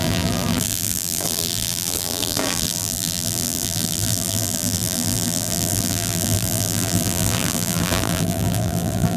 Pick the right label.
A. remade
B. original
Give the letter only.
A